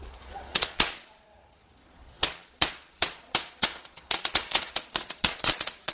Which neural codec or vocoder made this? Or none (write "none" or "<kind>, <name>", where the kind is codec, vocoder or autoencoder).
vocoder, Vocos